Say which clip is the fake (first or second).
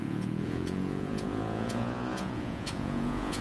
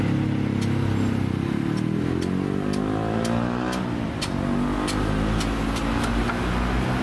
first